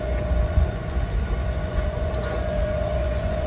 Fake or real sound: fake